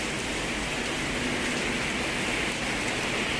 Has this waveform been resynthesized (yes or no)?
no